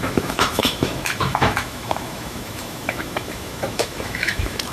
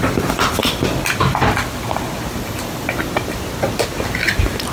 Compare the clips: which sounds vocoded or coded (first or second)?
first